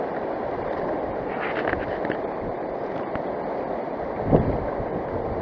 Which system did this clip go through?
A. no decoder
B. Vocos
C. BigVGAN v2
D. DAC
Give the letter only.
A